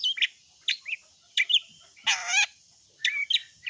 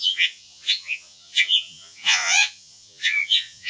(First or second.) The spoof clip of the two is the second